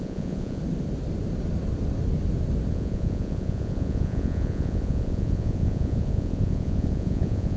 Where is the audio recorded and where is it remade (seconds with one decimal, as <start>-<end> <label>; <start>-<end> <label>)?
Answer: 0.0-0.6 remade; 0.6-2.7 recorded; 2.7-7.6 remade